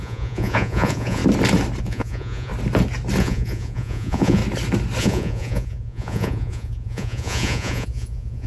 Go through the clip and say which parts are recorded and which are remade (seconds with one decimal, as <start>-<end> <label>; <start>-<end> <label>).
0.0-1.2 remade; 1.2-1.8 recorded; 1.8-2.5 remade; 2.5-3.2 recorded; 3.2-4.4 remade; 4.4-5.0 recorded; 5.0-8.5 remade